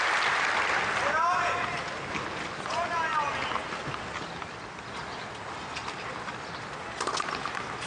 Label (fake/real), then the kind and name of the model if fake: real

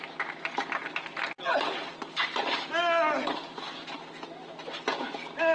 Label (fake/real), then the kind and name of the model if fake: real